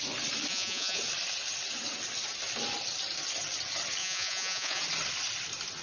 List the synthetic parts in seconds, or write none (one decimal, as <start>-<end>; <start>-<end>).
0.5-1.0; 4.0-4.8